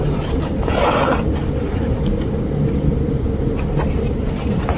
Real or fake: real